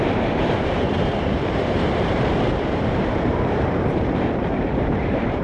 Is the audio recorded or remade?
remade